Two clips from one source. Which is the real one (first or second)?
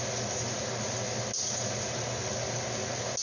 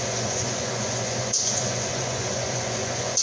first